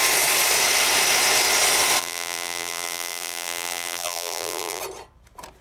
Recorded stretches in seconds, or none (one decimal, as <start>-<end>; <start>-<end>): 0.0-2.0; 4.8-5.6